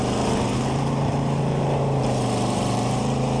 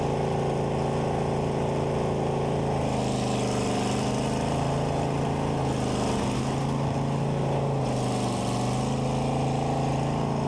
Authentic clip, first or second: second